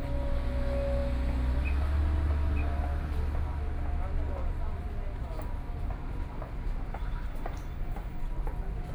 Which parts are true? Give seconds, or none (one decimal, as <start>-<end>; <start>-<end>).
0.0-4.4; 8.2-8.9

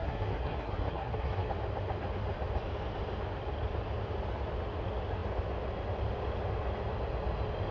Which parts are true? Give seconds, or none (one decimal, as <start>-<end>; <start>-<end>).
1.5-7.7

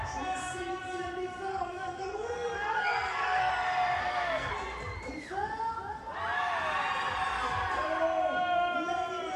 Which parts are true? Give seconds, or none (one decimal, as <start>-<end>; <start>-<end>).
0.0-1.5; 3.5-4.0; 4.5-9.4